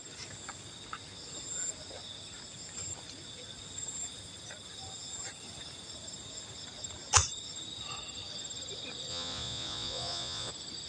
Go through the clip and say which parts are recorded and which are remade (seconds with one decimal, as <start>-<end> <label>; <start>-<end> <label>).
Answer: 0.0-9.1 recorded; 9.1-10.5 remade; 10.5-10.9 recorded